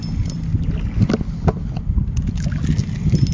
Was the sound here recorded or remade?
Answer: recorded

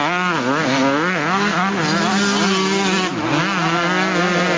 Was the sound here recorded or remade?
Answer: recorded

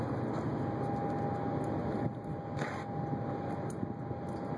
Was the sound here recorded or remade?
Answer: recorded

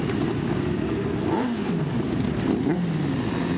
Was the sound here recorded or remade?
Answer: recorded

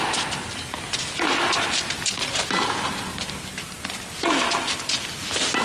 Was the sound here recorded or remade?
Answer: recorded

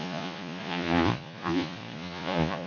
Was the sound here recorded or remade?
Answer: remade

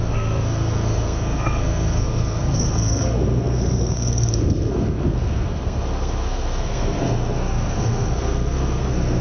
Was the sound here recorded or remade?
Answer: remade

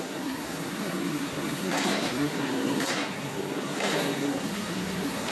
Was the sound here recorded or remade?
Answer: remade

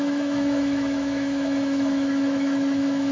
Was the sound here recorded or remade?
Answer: remade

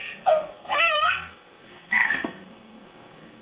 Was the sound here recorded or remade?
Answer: remade